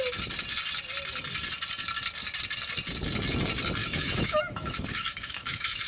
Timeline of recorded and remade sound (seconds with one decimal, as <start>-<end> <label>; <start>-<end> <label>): 0.0-3.8 recorded; 3.8-5.9 remade